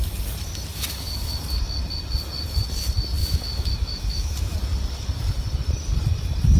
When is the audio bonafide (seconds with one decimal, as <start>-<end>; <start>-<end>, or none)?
0.0-0.7; 1.4-3.2; 4.6-6.6